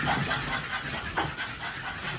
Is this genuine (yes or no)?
yes